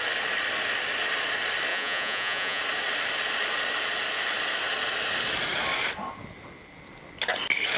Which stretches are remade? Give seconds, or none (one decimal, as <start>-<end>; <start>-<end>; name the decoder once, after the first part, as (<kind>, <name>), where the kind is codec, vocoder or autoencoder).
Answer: 1.7-2.6 (vocoder, Vocos)